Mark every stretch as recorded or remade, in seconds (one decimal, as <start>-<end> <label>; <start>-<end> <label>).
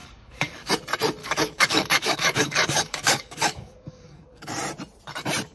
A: 0.0-0.7 remade; 0.7-1.2 recorded; 1.2-4.5 remade; 4.5-5.5 recorded